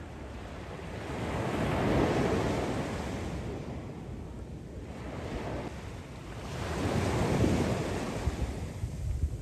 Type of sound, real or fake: real